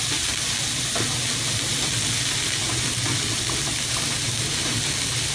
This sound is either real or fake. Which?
real